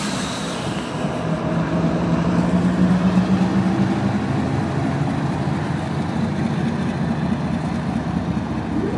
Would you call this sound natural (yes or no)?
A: yes